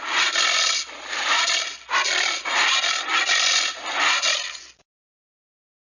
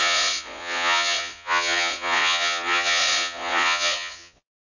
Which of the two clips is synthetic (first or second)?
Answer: second